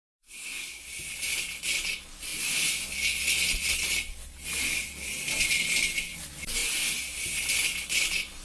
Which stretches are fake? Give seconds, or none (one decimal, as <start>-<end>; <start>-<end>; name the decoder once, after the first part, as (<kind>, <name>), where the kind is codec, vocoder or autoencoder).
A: 0.0-0.8 (codec, SNAC)